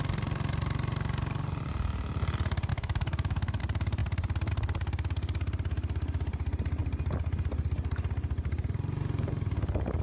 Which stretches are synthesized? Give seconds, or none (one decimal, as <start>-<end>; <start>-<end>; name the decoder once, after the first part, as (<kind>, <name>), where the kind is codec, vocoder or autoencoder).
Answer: 2.7-3.6 (autoencoder, DAC-VAE)